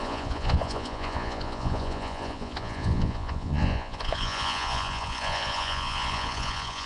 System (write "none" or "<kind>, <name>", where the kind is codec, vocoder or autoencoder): vocoder, Vocos